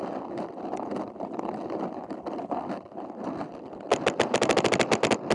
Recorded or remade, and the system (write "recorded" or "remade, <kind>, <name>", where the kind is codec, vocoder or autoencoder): recorded